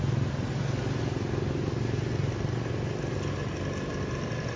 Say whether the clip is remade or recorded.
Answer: recorded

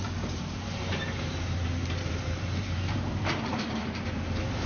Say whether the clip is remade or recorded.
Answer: remade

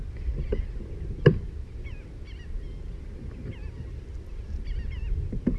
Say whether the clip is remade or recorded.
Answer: recorded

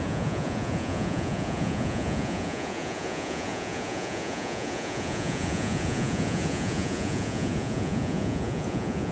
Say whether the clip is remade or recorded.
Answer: remade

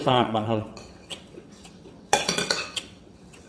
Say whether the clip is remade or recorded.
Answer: remade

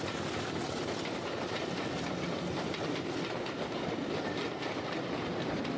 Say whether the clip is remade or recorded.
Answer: recorded